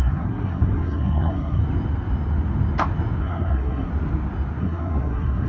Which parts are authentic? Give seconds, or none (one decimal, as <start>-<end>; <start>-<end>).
1.6-3.2; 3.9-4.6